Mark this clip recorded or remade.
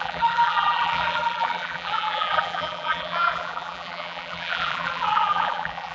remade